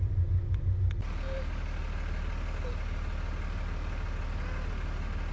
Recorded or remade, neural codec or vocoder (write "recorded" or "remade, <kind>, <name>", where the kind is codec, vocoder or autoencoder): recorded